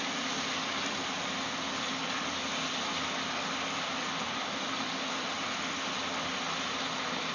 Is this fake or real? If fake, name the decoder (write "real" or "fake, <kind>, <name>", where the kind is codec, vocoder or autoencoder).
real